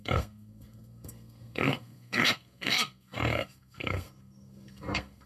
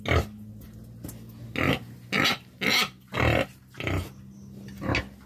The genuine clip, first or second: second